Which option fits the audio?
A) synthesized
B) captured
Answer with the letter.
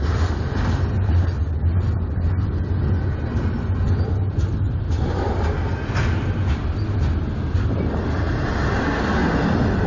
B